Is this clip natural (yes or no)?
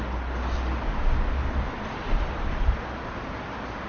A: yes